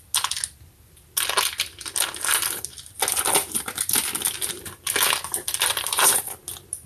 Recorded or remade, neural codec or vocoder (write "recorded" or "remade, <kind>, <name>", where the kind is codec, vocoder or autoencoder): recorded